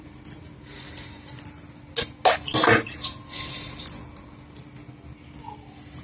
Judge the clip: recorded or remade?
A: recorded